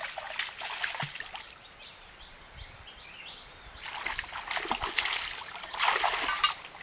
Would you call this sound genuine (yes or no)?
yes